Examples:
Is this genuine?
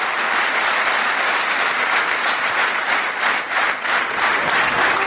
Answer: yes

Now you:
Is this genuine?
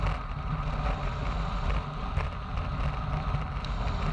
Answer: yes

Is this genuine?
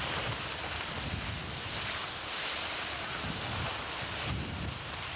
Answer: yes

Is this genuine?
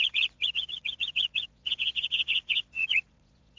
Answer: no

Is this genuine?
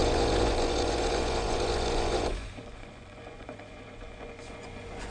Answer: no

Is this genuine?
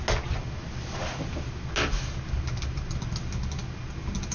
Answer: yes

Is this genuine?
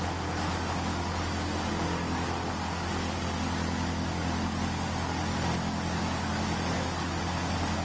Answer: yes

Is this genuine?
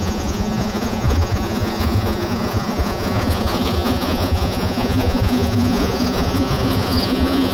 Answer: no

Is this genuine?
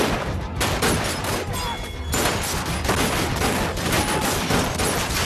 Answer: yes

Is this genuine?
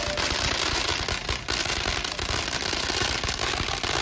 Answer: yes